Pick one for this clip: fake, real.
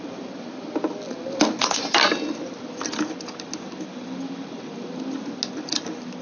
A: real